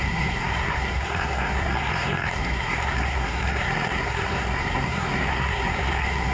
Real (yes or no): no